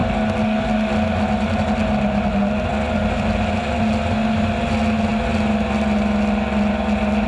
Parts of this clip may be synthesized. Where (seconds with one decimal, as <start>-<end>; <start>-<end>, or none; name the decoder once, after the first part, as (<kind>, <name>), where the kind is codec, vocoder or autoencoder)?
none